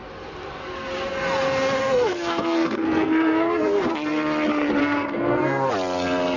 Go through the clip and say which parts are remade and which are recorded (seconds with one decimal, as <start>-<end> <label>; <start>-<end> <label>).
0.0-1.8 recorded; 1.8-3.9 remade; 3.9-4.8 recorded; 4.8-5.7 remade; 5.7-6.4 recorded